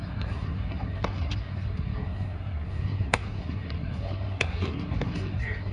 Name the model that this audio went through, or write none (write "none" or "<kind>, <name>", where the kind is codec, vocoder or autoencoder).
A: codec, SNAC